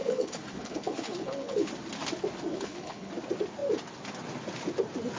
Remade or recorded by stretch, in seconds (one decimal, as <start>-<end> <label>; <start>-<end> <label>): 0.0-1.7 remade; 1.7-2.5 recorded; 2.5-3.1 remade; 3.1-5.2 recorded